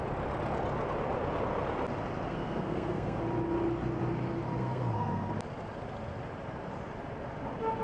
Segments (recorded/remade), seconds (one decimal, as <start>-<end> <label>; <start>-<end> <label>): 0.0-2.3 recorded; 2.3-3.2 remade; 3.2-4.6 recorded; 4.6-5.3 remade; 5.3-7.8 recorded